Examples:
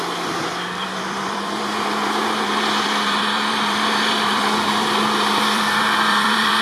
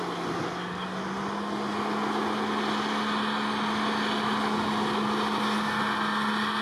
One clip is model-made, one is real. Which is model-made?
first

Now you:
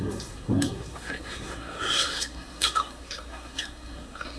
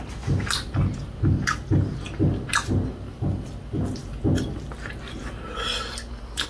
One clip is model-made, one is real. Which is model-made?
first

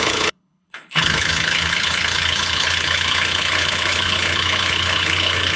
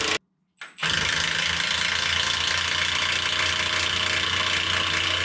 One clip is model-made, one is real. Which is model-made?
first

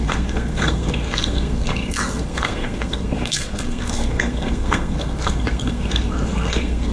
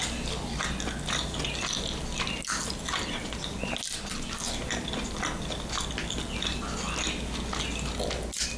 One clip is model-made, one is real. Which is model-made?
first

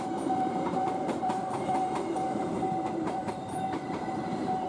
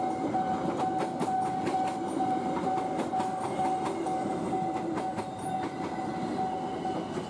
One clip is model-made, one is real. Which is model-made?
first